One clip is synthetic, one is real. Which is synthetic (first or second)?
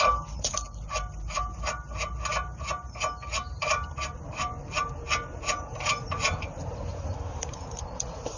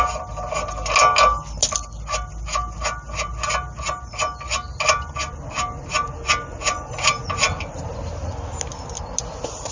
first